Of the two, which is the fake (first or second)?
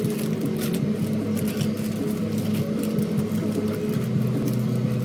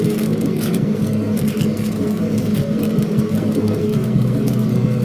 second